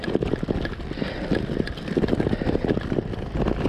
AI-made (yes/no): no